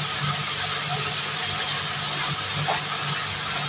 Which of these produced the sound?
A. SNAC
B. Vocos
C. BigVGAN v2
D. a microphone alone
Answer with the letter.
D